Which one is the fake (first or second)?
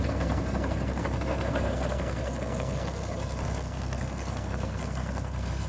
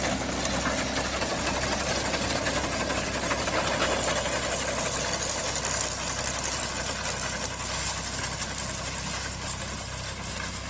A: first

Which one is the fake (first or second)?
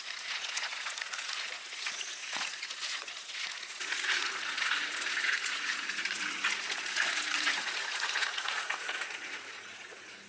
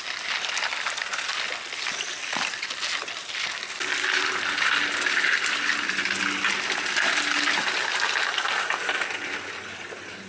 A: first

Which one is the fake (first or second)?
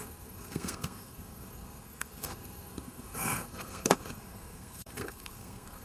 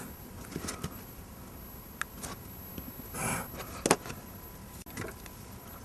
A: first